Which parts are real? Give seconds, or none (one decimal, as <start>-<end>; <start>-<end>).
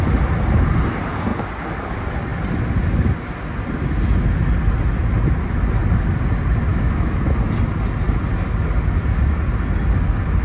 0.0-6.7; 7.3-10.4